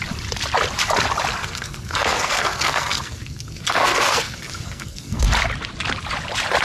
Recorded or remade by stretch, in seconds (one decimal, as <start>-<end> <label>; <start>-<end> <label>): 0.0-1.4 recorded; 1.4-5.3 remade; 5.3-6.6 recorded